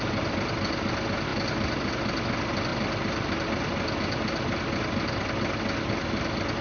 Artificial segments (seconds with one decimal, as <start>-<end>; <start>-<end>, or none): none